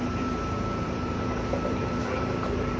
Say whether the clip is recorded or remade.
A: remade